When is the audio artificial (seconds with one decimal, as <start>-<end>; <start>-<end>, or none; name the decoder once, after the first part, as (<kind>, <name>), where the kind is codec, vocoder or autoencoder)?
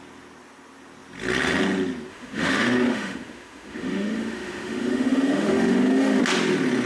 2.1-6.2 (autoencoder, DAC-VAE)